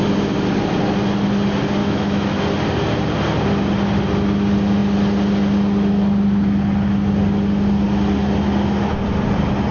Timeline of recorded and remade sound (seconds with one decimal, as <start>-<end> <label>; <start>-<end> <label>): 0.0-1.8 recorded; 1.8-2.4 remade; 2.4-9.7 recorded